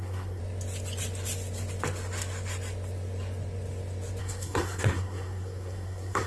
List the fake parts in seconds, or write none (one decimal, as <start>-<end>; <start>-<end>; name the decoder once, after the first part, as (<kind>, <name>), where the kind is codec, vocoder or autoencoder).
0.0-0.4 (codec, SNAC); 4.2-6.3